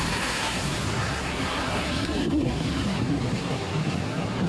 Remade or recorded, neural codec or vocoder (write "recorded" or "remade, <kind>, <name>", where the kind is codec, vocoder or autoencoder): remade, codec, SNAC